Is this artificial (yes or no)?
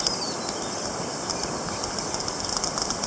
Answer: no